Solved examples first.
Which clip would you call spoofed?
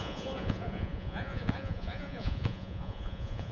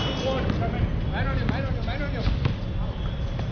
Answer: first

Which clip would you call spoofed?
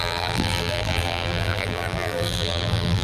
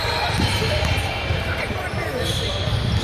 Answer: first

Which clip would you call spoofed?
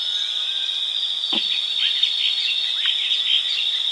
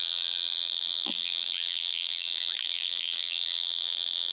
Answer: second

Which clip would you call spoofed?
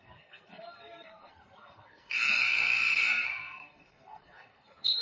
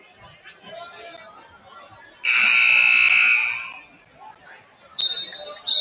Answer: first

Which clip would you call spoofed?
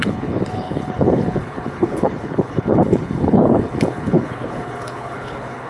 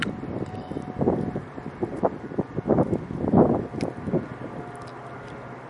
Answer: first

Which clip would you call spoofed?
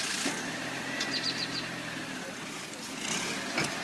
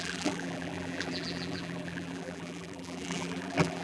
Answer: second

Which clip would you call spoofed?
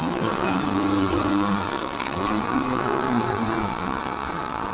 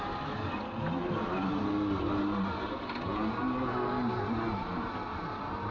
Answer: first